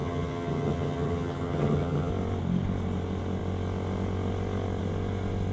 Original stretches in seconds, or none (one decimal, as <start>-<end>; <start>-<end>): 2.1-5.5